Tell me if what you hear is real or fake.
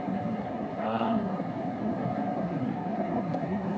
fake